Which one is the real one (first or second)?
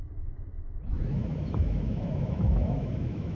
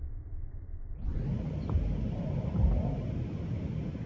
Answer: second